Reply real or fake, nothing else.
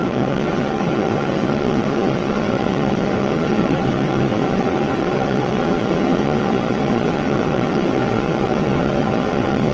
fake